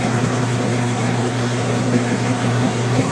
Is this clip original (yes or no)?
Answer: no